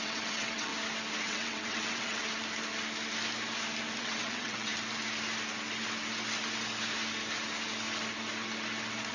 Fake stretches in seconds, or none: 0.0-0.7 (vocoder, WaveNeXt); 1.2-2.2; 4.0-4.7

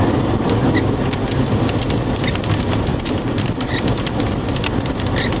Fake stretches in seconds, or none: 2.9-3.9 (vocoder, BigVGAN v2)

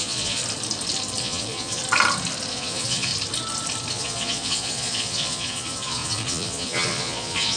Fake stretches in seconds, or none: 0.0-0.4 (vocoder, Vocos); 1.2-1.8; 2.5-3.1; 3.9-7.6

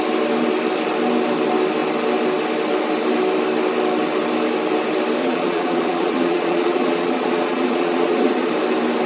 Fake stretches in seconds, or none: 5.2-8.5 (vocoder, Vocos)

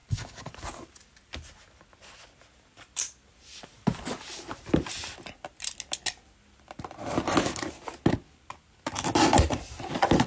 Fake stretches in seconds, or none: 0.0-1.3 (vocoder, BigVGAN v2); 3.5-4.9

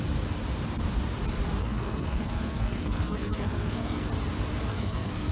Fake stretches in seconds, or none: 1.6-4.1 (codec, SNAC); 4.7-5.3

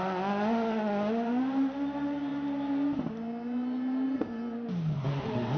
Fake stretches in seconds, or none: none

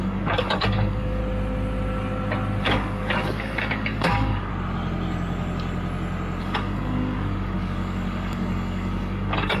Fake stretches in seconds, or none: 0.0-1.2 (codec, DAC); 2.6-4.5; 6.4-9.6